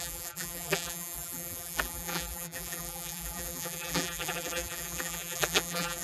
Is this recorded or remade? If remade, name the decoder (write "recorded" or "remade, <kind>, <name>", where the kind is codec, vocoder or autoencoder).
remade, vocoder, BigVGAN v2